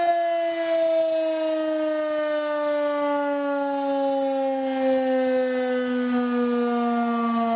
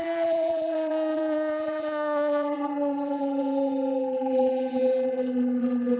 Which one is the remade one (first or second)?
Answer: second